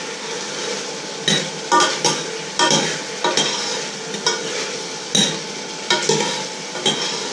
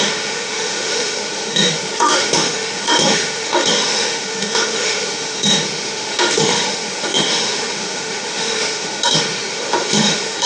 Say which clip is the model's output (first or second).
second